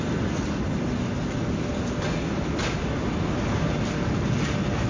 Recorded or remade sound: recorded